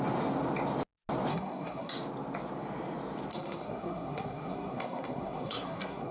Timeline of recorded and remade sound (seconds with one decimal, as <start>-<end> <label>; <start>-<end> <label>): 0.0-1.3 recorded; 1.3-1.9 remade; 1.9-3.3 recorded; 3.3-6.1 remade